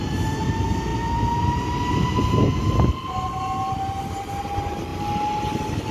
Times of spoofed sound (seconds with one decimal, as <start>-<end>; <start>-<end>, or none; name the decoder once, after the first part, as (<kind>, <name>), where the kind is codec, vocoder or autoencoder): none